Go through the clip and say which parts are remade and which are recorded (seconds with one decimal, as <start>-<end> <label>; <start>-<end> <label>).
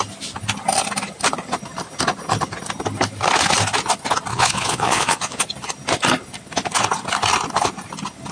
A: 0.0-4.3 recorded; 4.3-5.4 remade; 5.4-8.3 recorded